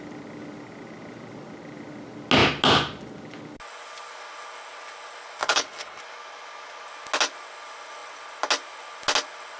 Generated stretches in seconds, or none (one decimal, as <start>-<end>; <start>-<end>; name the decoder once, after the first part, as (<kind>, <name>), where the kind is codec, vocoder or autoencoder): 5.4-6.0 (codec, HILCodec)